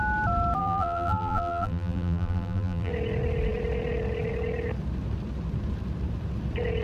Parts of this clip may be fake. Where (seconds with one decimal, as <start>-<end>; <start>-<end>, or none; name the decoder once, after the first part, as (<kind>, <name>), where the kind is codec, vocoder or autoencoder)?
0.6-2.9 (vocoder, BigVGAN v2)